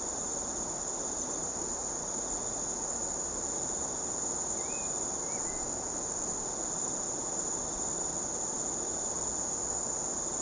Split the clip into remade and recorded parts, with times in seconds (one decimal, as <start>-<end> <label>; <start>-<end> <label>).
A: 0.0-1.8 recorded; 1.8-3.1 remade; 3.1-10.4 recorded